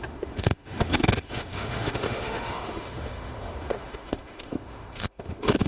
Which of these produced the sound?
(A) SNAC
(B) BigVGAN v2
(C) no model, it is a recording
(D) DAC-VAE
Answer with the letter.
D